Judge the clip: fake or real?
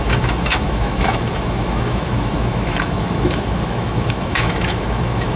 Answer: fake